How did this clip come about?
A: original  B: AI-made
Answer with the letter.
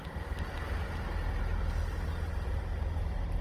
A